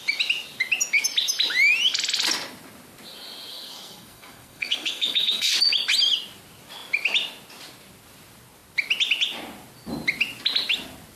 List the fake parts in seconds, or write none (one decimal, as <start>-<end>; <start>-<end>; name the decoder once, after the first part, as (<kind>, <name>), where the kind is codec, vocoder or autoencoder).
3.5-5.5 (codec, SNAC)